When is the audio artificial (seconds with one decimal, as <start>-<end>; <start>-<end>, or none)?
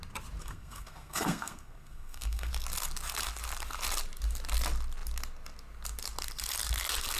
0.4-2.5